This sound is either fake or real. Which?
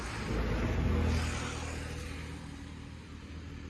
real